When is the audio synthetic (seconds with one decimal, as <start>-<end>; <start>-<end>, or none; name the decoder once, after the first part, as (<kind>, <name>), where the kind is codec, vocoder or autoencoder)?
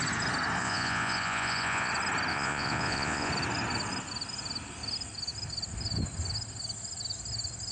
0.6-1.9 (vocoder, Vocos); 2.3-3.3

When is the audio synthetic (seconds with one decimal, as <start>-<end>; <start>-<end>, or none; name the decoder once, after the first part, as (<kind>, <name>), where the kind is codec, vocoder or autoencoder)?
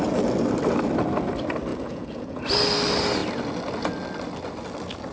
1.7-2.4 (vocoder, Vocos)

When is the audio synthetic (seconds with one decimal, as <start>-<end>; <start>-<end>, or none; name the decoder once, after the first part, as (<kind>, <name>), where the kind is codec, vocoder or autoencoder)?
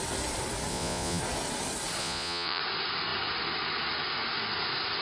0.7-1.2 (vocoder, Vocos); 2.0-2.6